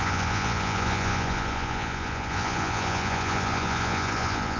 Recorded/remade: remade